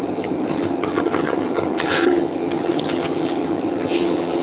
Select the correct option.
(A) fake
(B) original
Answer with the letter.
A